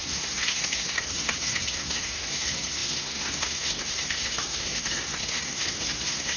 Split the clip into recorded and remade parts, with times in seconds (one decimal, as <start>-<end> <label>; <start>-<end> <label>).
0.0-6.4 remade